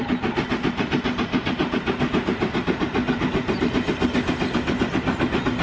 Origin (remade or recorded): recorded